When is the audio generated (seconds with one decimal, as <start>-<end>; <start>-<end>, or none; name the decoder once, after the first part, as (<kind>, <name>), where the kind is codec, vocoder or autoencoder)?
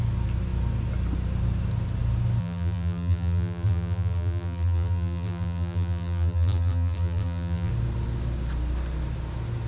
2.4-7.7 (vocoder, BigVGAN v2)